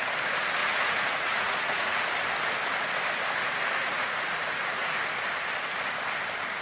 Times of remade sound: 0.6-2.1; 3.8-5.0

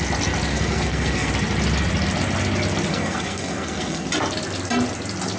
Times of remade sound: 0.5-1.3; 2.9-4.1

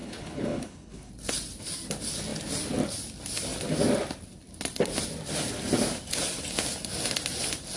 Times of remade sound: 0.0-1.1

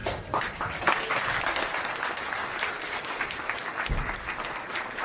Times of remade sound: none

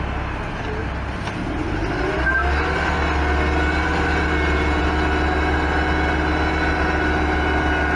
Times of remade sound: none

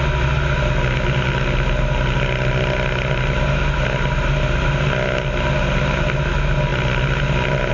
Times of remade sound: none

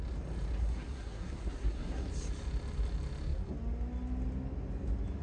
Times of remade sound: 0.6-2.1

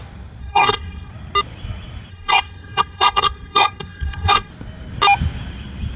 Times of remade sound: 0.4-1.1; 2.1-4.5